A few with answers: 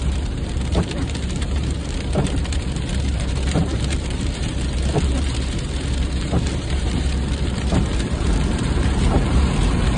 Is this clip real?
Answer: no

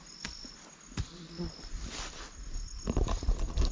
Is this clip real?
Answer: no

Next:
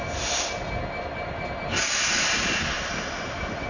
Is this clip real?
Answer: yes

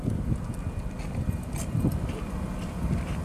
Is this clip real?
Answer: no